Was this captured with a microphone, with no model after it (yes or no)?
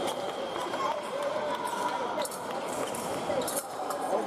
no